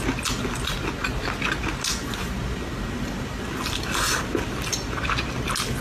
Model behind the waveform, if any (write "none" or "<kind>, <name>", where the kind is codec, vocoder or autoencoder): none